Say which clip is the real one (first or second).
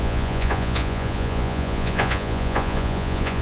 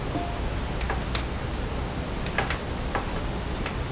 second